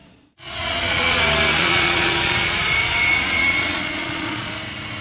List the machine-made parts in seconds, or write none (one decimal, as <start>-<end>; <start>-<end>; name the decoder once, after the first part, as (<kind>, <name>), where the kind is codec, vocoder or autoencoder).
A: 0.0-1.2 (vocoder, Vocos); 1.6-4.5

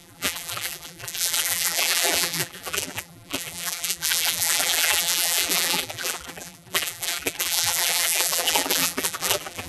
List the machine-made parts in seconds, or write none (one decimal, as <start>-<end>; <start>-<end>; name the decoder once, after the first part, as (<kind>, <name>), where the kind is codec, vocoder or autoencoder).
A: 0.0-9.7 (vocoder, BigVGAN v2)